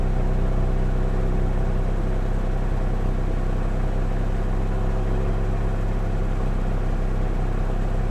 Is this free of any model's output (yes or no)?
yes